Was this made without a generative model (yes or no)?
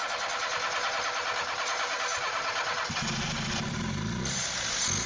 yes